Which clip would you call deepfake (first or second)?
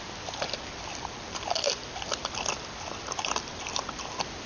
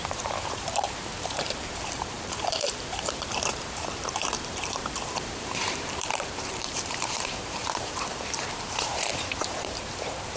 second